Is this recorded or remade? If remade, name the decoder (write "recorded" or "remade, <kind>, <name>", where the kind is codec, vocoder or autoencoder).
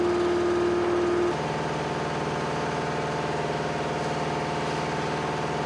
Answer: recorded